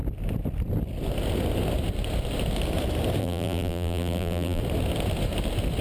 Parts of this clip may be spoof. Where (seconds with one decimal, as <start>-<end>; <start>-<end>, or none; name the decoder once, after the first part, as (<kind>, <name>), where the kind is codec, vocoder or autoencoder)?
3.2-4.6 (vocoder, BigVGAN v2)